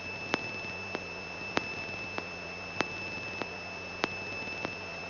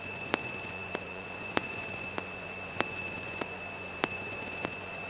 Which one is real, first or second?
first